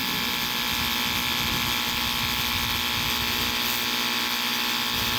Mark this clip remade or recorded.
recorded